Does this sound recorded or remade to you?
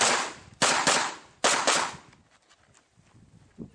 recorded